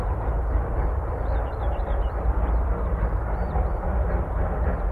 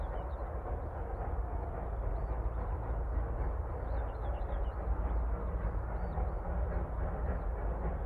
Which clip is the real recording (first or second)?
second